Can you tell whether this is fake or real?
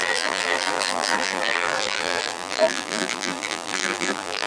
fake